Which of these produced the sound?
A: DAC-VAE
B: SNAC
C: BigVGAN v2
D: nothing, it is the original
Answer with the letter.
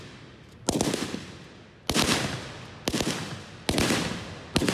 D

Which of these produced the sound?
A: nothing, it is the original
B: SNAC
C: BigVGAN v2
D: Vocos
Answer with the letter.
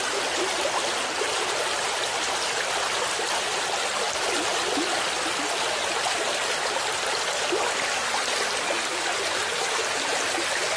A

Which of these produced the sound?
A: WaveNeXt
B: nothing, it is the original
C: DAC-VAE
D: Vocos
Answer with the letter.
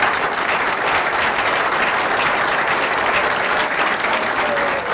B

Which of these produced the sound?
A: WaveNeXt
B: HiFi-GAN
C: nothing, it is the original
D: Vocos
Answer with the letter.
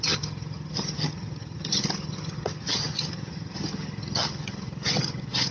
B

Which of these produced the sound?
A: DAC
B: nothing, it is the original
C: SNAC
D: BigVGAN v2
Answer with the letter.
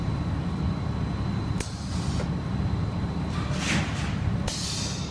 B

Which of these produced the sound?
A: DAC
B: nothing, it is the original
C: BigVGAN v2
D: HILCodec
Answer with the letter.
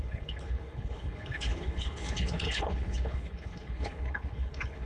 D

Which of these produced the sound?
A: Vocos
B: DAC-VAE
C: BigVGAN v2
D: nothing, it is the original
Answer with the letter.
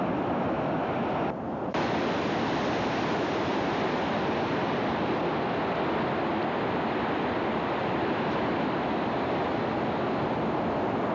D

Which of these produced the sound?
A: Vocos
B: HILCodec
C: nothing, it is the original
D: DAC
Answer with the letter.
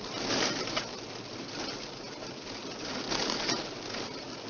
C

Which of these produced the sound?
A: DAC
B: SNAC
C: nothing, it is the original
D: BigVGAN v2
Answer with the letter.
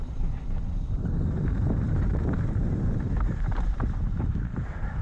D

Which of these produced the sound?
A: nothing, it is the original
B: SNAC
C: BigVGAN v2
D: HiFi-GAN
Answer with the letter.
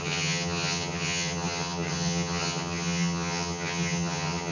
D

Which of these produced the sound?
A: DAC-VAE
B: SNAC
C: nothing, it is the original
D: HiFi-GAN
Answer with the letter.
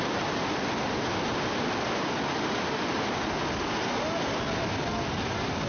C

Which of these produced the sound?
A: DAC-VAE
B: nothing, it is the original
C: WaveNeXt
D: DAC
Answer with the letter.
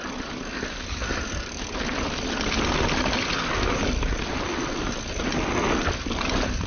B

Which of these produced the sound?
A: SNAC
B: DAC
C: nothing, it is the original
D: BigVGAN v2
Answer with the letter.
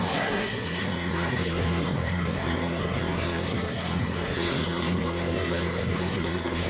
A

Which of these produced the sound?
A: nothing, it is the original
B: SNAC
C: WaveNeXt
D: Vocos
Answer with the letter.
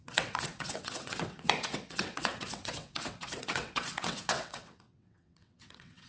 C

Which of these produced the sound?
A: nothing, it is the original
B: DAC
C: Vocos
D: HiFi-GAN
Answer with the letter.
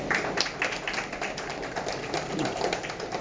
A